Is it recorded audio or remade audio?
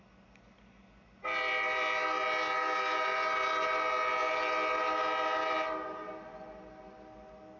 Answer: recorded